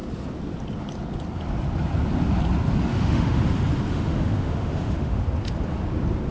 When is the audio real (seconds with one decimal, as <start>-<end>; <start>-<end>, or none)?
0.0-2.9; 3.4-3.9; 5.2-6.3